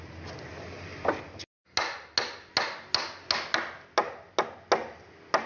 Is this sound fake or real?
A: real